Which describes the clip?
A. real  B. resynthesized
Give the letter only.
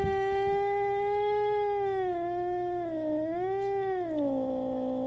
B